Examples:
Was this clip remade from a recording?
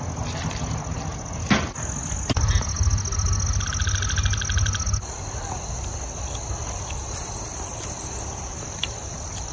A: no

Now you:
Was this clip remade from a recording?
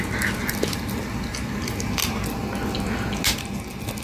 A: no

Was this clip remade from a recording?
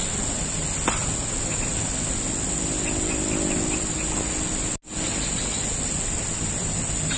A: no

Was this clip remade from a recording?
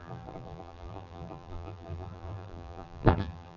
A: yes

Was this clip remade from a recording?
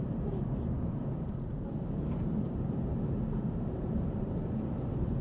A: yes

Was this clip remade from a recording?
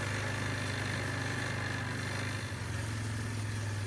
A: no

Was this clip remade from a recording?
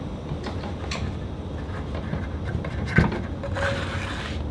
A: no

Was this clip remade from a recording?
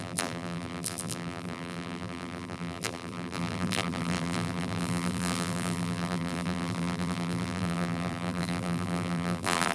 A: yes